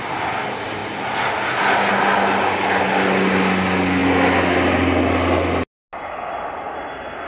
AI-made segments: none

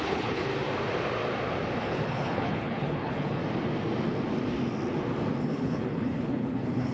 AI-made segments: 0.0-0.5; 1.8-3.4; 5.4-6.9

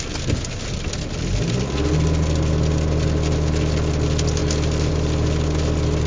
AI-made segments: none

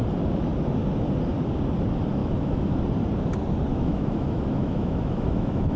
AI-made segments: 2.2-2.8; 3.7-5.8

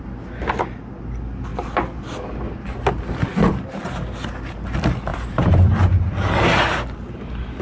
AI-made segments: none